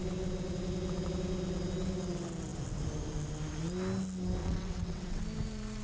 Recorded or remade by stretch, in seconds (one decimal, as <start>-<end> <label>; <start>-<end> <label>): 0.0-4.4 recorded; 4.4-5.2 remade; 5.2-5.8 recorded